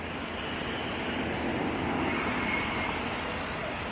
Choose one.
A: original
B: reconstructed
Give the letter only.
A